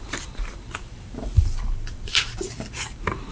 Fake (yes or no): yes